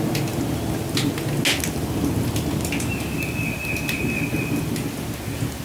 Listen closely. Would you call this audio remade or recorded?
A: recorded